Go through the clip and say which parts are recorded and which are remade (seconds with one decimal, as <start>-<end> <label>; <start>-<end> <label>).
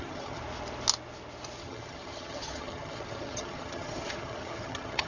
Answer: 0.0-0.4 remade; 0.4-1.6 recorded; 1.6-5.1 remade